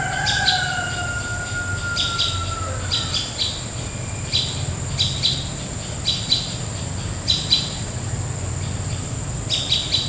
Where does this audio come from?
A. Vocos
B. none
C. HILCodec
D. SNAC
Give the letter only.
B